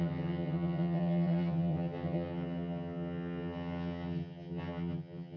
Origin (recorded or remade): remade